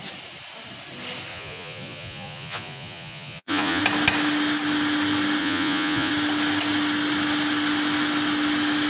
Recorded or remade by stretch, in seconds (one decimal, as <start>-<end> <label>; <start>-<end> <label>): 0.0-1.3 recorded; 1.3-3.8 remade; 3.8-5.4 recorded; 5.4-6.1 remade; 6.1-8.9 recorded

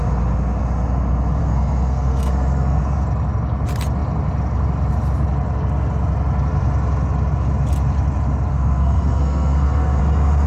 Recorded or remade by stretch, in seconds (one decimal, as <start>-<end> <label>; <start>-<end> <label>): 0.0-1.4 recorded; 1.4-2.8 remade; 2.8-8.5 recorded; 8.5-10.0 remade; 10.0-10.5 recorded

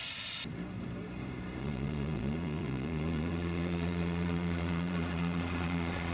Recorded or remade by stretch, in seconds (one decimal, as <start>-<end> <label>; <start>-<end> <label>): 0.0-1.6 recorded; 1.6-6.1 remade

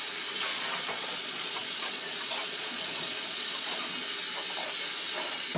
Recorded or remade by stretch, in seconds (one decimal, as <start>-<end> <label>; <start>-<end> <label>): 0.0-0.5 recorded; 0.5-3.9 remade; 3.9-5.6 recorded

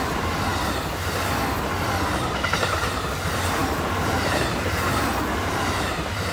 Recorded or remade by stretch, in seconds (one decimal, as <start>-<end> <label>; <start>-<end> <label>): 0.0-0.5 remade; 0.5-2.3 recorded; 2.3-6.3 remade

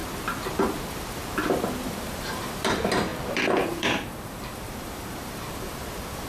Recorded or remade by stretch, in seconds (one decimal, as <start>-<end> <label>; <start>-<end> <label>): 0.0-1.9 recorded; 1.9-6.3 remade

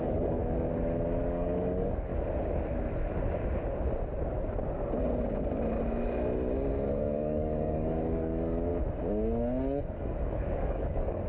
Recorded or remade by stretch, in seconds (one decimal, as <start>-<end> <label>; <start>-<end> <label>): 0.0-0.4 remade; 0.4-1.2 recorded; 1.2-2.1 remade; 2.1-7.0 recorded; 7.0-8.7 remade; 8.7-9.8 recorded; 9.8-11.3 remade